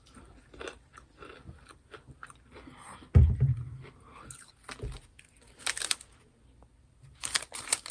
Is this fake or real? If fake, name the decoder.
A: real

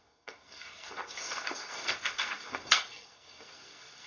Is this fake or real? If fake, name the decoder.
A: fake, codec, SNAC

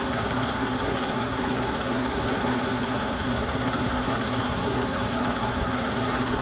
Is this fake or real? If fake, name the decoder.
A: fake, codec, SNAC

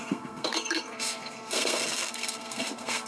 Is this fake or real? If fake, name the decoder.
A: fake, codec, SNAC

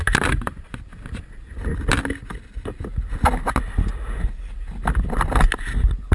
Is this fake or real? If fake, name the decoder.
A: real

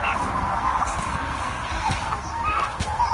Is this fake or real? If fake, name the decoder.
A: fake, codec, SNAC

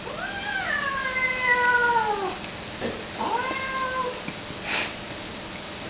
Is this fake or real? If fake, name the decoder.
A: real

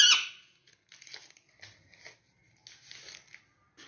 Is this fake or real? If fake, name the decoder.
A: real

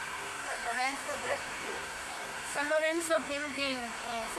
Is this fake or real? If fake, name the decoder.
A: fake, codec, SNAC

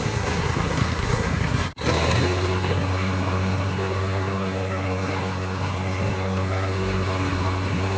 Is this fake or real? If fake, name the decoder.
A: fake, codec, SNAC